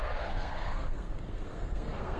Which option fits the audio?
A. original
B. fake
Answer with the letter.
B